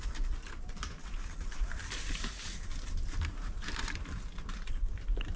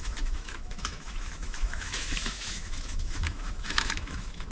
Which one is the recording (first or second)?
first